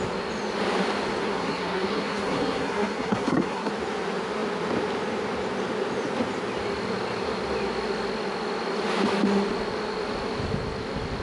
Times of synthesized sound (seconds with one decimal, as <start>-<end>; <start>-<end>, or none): 1.2-3.7